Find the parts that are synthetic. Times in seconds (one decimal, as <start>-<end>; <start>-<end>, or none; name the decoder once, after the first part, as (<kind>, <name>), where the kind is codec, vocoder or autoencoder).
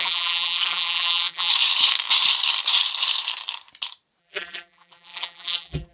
0.0-1.5 (vocoder, BigVGAN v2); 4.2-5.9